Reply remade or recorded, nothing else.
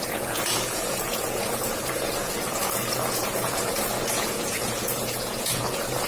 remade